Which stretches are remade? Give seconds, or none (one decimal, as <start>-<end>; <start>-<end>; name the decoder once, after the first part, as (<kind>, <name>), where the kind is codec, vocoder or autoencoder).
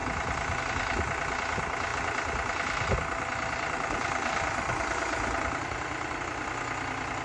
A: 0.0-0.6 (vocoder, BigVGAN v2); 1.9-6.2